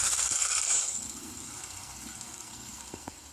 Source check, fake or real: fake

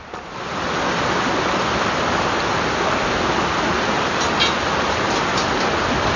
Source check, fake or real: real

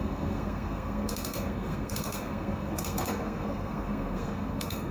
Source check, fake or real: fake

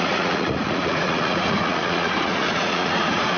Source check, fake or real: fake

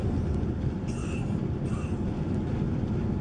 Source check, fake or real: real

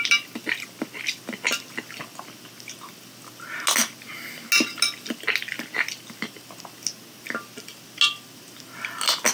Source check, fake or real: real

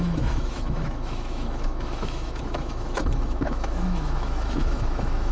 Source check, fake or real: fake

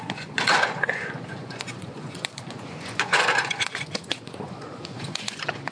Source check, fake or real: fake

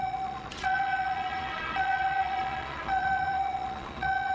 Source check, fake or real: fake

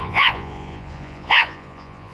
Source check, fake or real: fake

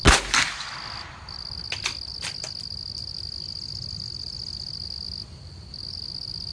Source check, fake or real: real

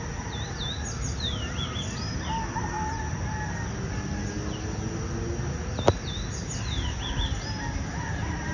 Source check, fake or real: real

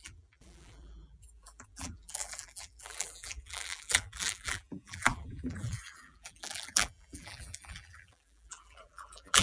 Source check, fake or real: fake